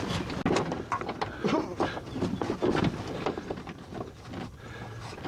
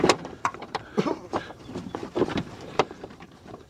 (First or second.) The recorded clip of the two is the first